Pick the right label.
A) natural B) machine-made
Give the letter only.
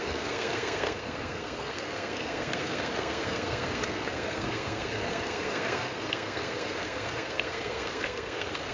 B